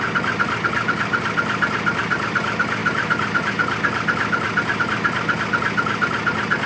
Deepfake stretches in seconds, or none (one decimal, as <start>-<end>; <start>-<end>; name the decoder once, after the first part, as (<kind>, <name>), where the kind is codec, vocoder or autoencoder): none

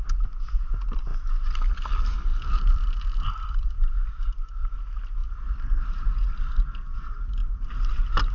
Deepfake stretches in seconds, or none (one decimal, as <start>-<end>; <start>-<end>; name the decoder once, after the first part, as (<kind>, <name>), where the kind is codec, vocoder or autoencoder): 2.3-4.2 (vocoder, BigVGAN v2); 5.2-6.1

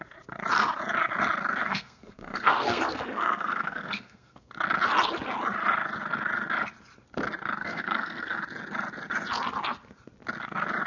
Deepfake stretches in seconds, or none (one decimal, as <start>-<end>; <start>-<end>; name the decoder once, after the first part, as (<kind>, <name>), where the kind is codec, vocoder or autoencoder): 1.6-4.5 (codec, SNAC); 7.6-8.4

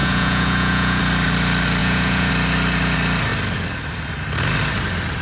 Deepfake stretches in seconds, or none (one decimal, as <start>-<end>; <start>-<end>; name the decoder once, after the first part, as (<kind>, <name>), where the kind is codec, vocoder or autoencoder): 0.0-1.0 (vocoder, Vocos); 1.8-2.3

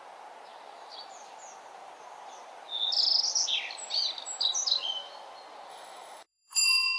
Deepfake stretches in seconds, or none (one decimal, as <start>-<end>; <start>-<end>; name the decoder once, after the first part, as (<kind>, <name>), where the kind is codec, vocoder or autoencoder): 5.7-7.0 (autoencoder, DAC-VAE)